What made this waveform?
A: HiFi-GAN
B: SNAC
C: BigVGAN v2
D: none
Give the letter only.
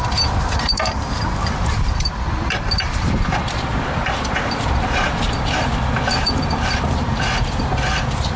C